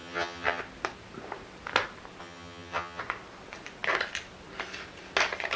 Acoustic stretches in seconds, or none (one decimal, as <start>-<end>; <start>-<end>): 0.6-2.2; 3.0-5.6